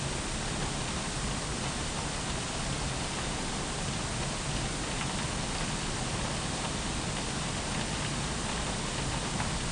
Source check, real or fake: real